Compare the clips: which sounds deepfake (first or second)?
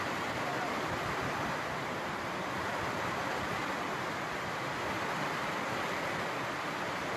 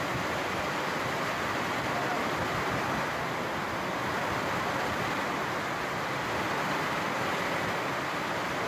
first